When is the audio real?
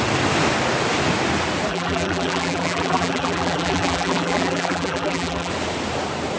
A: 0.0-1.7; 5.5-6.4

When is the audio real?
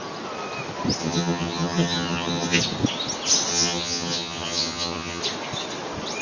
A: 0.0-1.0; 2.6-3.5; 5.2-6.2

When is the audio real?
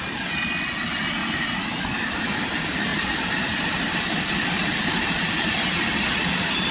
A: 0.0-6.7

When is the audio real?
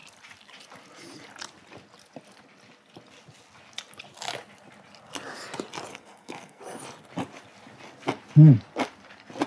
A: 0.0-5.9; 6.6-9.5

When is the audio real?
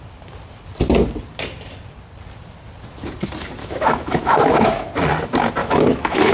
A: 0.0-3.6; 4.9-5.6